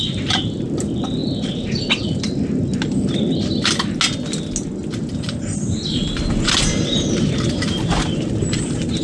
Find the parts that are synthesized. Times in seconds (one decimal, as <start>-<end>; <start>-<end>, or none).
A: 0.0-1.2; 6.4-9.0